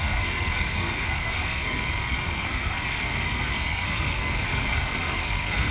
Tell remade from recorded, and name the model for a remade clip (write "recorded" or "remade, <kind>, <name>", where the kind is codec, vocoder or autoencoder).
remade, codec, SNAC